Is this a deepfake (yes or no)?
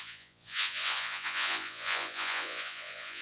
yes